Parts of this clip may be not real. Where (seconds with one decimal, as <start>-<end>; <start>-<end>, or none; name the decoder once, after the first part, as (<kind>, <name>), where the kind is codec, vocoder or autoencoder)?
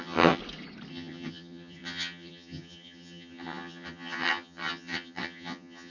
0.0-0.4 (vocoder, HiFi-GAN); 0.9-5.9